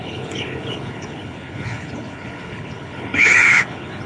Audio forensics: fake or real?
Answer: fake